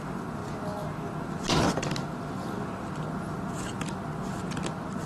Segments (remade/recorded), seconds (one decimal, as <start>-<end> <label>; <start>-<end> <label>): 0.0-5.1 recorded